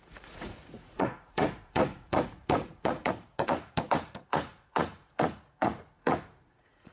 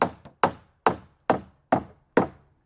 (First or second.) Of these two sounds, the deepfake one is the first